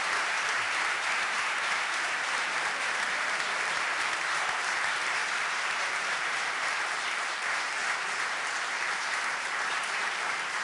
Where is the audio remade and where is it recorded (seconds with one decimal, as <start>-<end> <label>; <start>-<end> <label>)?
0.0-5.2 remade; 5.2-5.8 recorded; 5.8-7.8 remade; 7.8-9.0 recorded; 9.0-10.6 remade

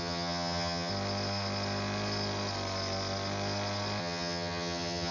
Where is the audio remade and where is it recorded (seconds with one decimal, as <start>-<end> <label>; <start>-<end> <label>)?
0.0-0.9 remade; 0.9-4.0 recorded; 4.0-5.1 remade

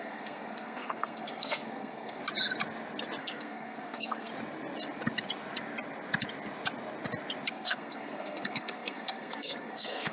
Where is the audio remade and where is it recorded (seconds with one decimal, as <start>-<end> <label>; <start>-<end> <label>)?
0.0-2.2 remade; 2.2-3.2 recorded; 3.2-4.3 remade; 4.3-7.5 recorded; 7.5-10.1 remade

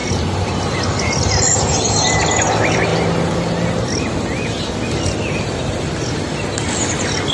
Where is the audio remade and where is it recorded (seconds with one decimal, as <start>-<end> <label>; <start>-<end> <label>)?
0.0-7.3 recorded

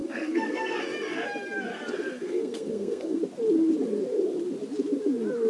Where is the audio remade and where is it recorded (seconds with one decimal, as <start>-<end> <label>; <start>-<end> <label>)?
0.0-0.8 remade; 0.8-1.7 recorded; 1.7-3.2 remade; 3.2-5.5 recorded

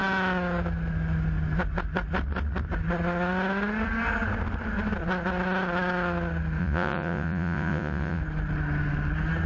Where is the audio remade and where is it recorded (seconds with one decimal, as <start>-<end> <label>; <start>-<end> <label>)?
0.0-6.6 recorded; 6.6-8.2 remade; 8.2-9.5 recorded